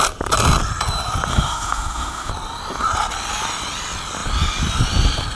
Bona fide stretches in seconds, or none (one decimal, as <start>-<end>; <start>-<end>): 0.0-1.3; 2.3-5.3